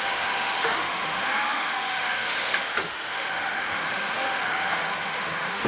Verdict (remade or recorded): remade